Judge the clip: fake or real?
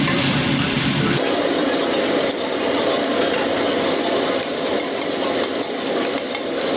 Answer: real